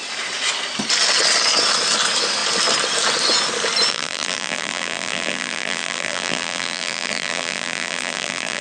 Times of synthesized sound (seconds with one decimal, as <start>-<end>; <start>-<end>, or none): 3.9-8.6